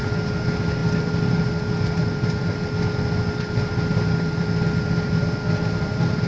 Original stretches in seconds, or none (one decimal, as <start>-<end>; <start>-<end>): 0.0-6.3